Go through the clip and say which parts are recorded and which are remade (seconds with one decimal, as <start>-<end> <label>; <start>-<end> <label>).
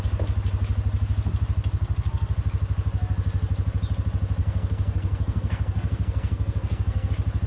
0.0-4.4 recorded; 4.4-7.1 remade; 7.1-7.5 recorded